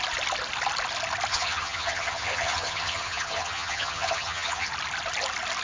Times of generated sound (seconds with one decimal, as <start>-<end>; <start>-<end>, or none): 1.3-4.7